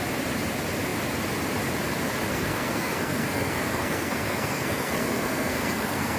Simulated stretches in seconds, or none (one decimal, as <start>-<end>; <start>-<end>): 2.3-6.2